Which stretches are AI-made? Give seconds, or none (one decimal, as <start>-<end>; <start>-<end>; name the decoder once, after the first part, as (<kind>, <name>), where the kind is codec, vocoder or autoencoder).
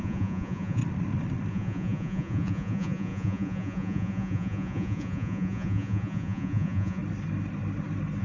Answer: 0.0-0.8 (vocoder, Vocos); 1.5-7.0